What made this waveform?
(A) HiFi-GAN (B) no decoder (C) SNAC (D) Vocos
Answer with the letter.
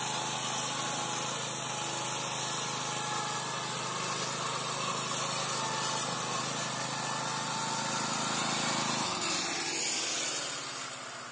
B